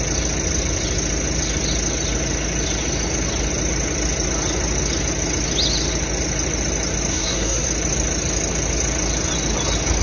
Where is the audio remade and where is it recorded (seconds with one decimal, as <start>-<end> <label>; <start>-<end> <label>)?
0.0-7.1 recorded; 7.1-7.7 remade; 7.7-10.0 recorded